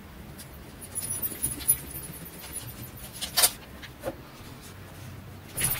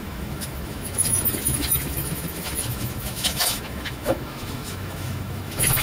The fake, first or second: second